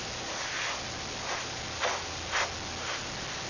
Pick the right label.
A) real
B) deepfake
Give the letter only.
A